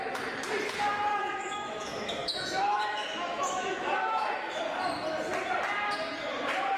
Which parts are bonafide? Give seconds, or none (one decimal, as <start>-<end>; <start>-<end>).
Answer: 0.0-1.1; 4.6-6.8